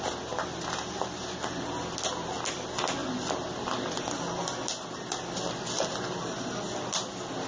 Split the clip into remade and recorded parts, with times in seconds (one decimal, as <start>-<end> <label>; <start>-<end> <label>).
0.0-7.5 recorded